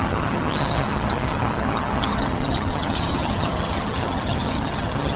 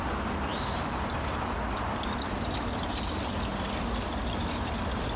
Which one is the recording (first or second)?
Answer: second